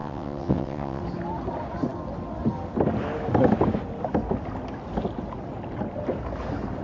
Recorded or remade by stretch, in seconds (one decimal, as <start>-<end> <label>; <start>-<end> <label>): 0.0-1.0 remade; 1.0-6.8 recorded